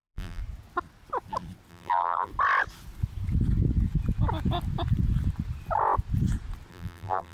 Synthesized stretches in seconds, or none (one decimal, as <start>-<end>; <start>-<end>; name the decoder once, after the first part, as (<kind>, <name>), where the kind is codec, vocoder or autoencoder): 0.0-0.4 (vocoder, BigVGAN v2); 1.7-2.3; 6.7-7.3